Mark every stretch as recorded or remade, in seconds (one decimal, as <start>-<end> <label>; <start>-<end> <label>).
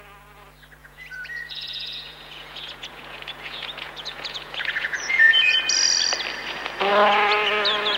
0.0-0.8 recorded; 0.8-5.6 remade; 5.6-8.0 recorded